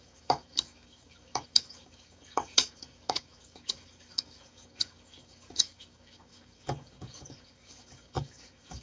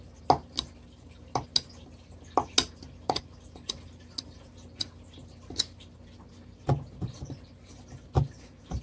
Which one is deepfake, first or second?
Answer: first